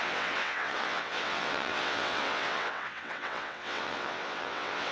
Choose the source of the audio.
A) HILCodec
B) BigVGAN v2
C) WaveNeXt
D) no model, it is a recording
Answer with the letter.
C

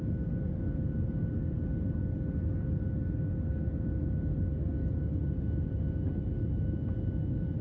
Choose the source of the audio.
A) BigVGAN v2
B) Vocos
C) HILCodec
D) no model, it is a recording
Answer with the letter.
D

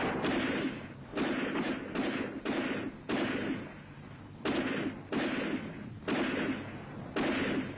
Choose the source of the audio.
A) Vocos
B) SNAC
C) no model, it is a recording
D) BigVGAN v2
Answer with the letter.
C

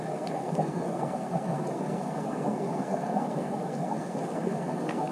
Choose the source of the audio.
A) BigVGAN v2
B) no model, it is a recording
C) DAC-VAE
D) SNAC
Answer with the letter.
D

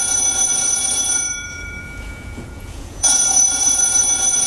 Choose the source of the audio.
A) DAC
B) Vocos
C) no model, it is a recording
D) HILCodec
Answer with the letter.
B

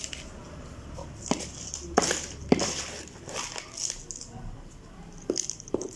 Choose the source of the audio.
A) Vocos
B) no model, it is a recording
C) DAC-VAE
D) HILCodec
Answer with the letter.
B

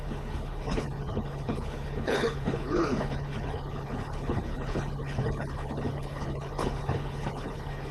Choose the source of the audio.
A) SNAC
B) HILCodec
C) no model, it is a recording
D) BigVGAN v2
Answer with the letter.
B